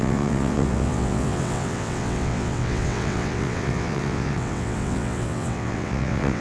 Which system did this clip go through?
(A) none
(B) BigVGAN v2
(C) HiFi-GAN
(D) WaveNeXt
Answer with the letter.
D